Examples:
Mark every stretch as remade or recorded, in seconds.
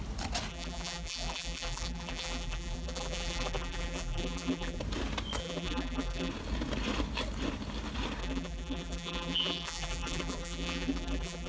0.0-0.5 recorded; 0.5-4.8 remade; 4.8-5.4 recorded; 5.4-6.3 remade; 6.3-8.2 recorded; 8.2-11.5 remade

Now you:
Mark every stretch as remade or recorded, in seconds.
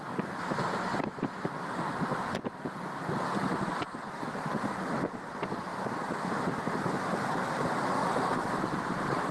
0.0-0.9 recorded; 0.9-4.7 remade; 4.7-8.0 recorded; 8.0-9.3 remade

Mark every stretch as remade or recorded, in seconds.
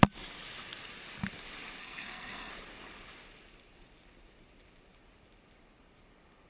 0.0-1.8 recorded; 1.8-2.5 remade; 2.5-6.5 recorded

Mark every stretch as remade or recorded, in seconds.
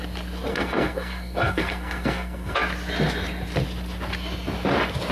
0.0-0.5 recorded; 0.5-2.6 remade; 2.6-5.1 recorded